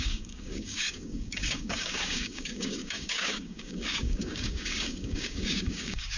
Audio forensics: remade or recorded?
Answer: remade